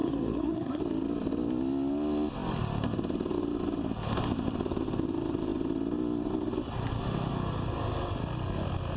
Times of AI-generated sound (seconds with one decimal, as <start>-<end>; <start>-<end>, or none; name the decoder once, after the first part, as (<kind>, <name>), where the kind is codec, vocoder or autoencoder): 0.0-0.8 (codec, SNAC)